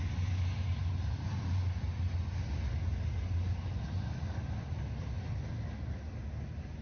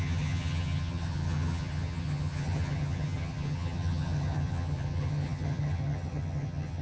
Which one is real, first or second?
first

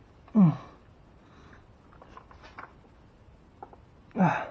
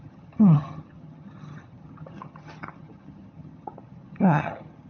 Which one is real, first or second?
first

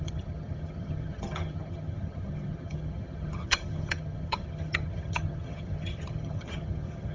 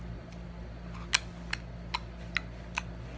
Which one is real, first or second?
second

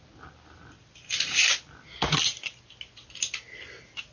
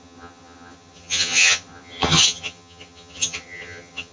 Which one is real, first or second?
first